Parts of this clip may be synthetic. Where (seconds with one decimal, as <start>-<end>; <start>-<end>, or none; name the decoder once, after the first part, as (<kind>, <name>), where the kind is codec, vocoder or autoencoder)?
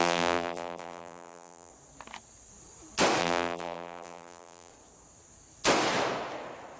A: 0.0-1.7 (vocoder, BigVGAN v2); 3.2-4.7